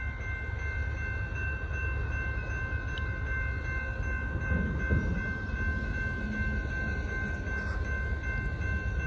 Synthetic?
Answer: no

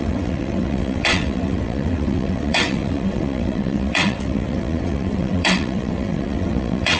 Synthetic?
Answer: yes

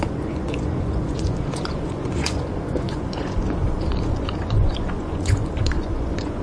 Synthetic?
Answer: yes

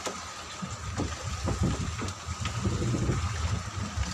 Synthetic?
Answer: no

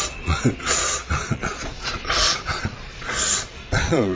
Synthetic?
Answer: yes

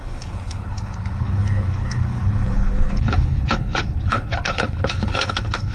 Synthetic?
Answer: yes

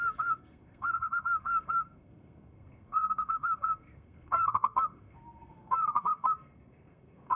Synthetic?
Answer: yes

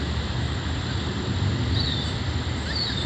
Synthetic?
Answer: no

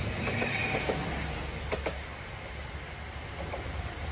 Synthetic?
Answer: yes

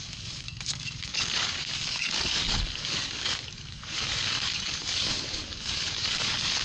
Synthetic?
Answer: yes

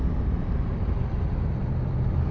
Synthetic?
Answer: no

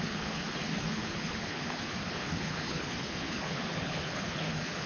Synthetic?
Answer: yes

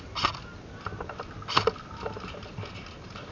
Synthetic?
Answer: no